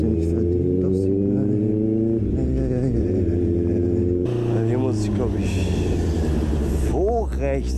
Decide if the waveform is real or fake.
real